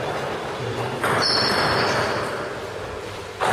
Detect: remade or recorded recorded